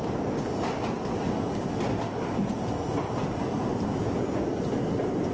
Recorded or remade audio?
recorded